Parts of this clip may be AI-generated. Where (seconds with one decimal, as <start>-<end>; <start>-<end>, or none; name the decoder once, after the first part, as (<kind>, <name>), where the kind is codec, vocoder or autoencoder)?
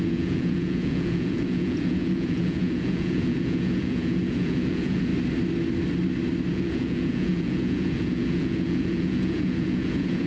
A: 0.0-5.1 (vocoder, Vocos); 6.5-10.3